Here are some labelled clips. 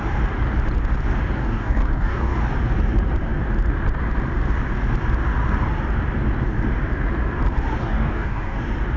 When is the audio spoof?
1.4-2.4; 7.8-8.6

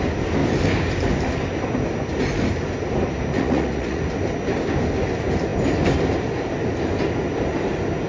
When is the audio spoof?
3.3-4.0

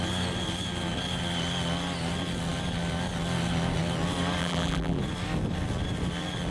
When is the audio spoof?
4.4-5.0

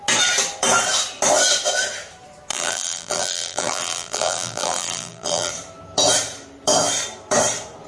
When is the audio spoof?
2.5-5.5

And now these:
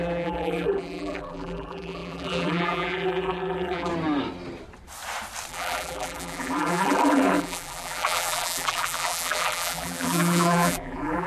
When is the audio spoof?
0.0-3.9; 5.5-11.3